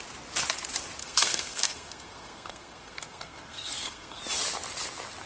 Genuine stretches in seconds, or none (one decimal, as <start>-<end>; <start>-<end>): 0.0-1.0; 4.2-5.3